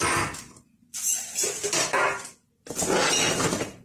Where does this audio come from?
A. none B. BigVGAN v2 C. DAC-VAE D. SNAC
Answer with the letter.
A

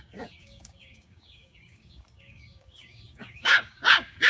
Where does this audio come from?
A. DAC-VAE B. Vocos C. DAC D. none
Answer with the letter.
C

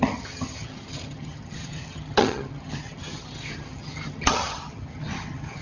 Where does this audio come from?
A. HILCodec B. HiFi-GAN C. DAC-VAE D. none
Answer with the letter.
B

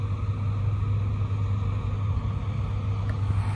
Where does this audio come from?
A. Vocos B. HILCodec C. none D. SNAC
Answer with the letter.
C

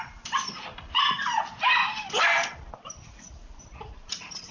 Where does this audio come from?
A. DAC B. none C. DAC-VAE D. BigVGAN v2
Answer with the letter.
B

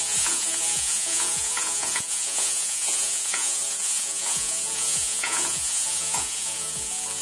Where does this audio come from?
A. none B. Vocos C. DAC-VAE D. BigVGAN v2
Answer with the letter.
B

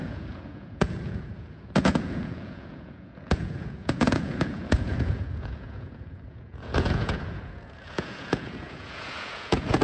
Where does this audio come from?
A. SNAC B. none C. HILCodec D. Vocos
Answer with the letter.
D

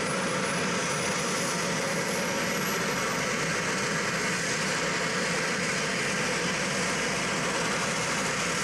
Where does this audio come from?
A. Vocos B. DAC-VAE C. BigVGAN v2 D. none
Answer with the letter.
D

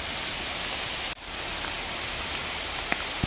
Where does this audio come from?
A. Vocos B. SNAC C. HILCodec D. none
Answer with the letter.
D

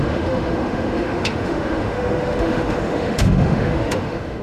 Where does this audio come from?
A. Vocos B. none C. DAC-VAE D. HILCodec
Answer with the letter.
C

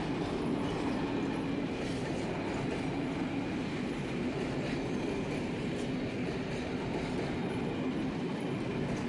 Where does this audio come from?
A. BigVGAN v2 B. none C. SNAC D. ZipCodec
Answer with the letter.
B